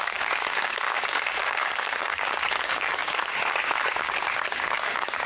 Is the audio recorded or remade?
remade